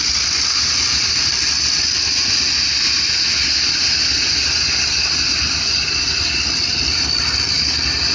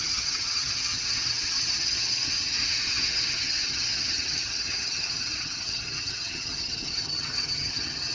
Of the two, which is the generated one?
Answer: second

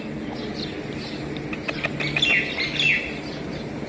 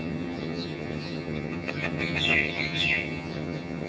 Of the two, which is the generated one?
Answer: second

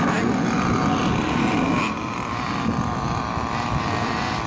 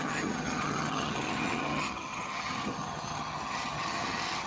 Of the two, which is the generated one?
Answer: second